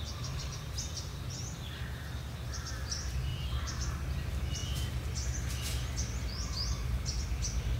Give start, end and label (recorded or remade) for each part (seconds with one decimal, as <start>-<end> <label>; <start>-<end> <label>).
0.0-3.3 recorded; 3.3-3.9 remade; 3.9-7.8 recorded